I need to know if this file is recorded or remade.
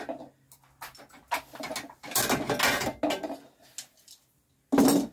recorded